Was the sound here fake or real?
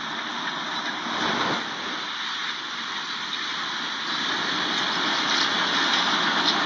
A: real